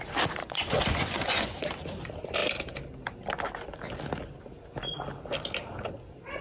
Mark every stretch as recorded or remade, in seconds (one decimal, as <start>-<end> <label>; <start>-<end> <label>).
0.0-0.4 recorded; 0.4-1.7 remade; 1.7-6.4 recorded